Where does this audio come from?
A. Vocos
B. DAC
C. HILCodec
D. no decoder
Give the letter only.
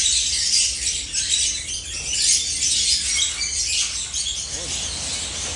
D